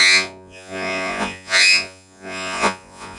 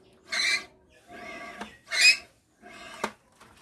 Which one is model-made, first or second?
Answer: first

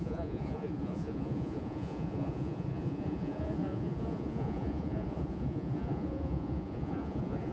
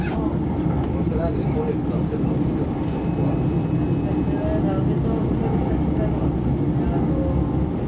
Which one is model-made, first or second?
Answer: first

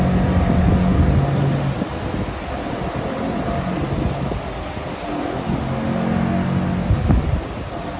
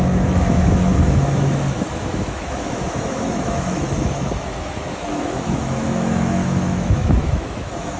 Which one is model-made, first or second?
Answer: second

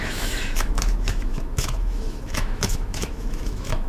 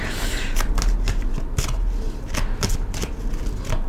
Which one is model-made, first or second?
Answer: first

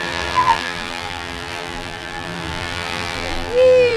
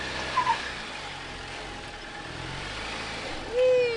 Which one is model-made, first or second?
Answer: first